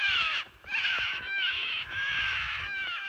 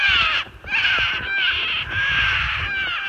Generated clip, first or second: first